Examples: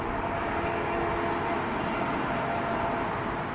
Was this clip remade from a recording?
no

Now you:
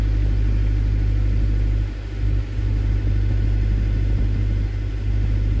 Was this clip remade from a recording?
no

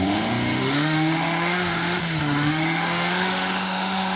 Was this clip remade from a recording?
yes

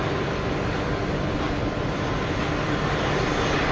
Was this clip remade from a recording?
no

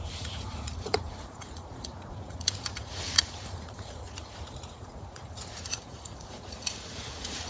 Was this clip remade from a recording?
yes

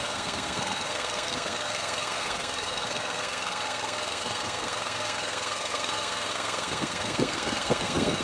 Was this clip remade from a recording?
yes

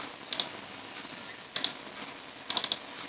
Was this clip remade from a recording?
no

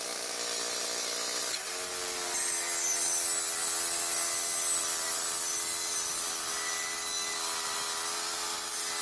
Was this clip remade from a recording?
no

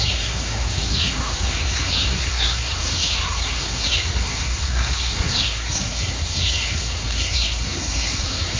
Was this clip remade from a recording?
yes